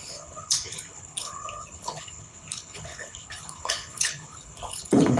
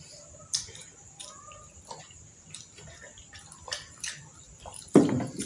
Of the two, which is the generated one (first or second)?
first